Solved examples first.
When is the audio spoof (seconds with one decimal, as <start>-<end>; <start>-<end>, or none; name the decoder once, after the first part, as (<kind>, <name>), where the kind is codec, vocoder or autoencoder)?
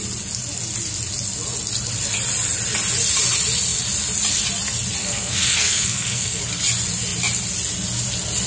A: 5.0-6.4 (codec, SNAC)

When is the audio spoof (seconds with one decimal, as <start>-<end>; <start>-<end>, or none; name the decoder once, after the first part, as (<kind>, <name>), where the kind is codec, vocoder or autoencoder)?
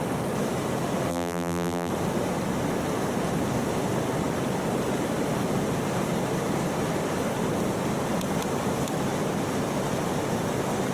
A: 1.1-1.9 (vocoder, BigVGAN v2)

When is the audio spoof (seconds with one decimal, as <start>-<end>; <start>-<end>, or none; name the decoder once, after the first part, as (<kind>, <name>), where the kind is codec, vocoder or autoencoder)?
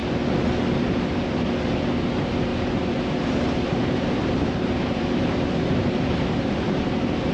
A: 2.5-7.3 (vocoder, BigVGAN v2)